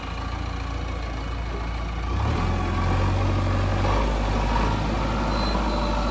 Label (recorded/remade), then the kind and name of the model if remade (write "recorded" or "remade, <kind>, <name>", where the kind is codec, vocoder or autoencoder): recorded